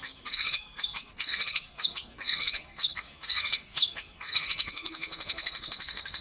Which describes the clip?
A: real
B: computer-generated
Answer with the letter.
B